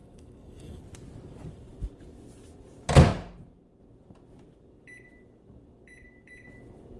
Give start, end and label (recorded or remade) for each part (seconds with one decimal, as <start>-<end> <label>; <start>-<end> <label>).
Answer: 0.0-0.8 remade; 0.8-7.0 recorded